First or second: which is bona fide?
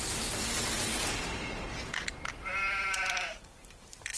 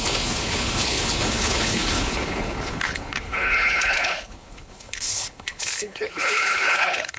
first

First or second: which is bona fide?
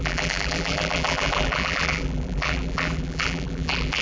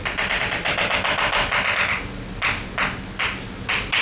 second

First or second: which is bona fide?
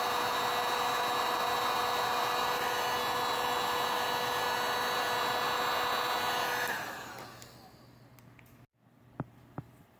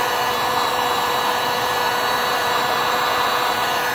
first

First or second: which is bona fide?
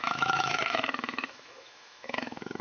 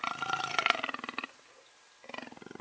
second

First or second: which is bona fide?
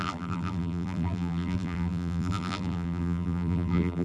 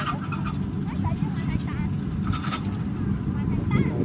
second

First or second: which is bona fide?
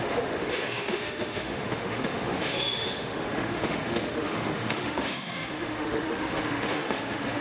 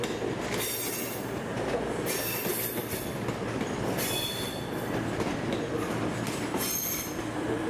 second